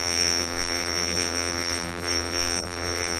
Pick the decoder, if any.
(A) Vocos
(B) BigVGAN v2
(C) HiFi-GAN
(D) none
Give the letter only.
B